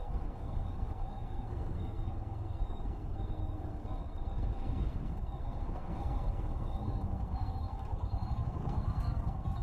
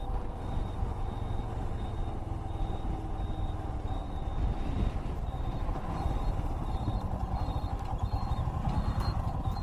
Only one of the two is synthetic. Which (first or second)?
first